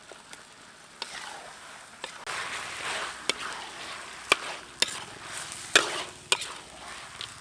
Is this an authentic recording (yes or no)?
yes